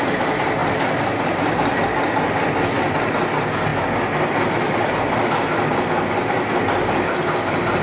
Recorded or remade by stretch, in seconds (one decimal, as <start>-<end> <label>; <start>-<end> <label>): 0.0-7.8 recorded